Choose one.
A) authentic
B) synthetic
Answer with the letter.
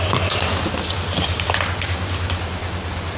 A